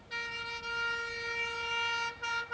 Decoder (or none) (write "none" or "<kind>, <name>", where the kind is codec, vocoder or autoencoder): none